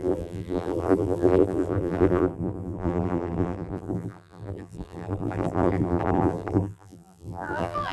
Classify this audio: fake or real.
fake